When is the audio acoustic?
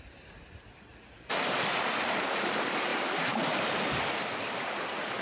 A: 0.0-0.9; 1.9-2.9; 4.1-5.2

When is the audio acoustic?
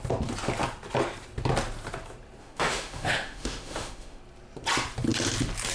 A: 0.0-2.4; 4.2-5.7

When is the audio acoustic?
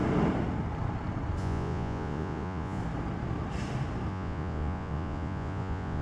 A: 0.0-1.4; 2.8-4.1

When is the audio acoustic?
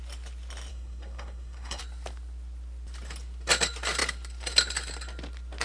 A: 0.0-0.7; 1.8-5.6